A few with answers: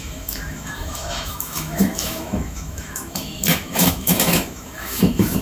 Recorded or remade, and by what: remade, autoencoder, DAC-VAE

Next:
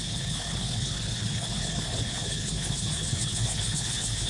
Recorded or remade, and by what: remade, codec, HILCodec